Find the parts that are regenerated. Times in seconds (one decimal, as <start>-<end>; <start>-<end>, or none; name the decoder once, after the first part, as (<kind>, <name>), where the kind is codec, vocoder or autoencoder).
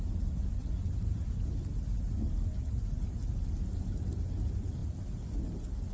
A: none